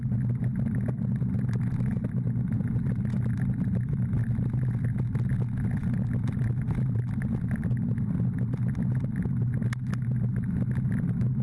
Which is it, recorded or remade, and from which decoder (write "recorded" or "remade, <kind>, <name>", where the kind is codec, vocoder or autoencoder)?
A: recorded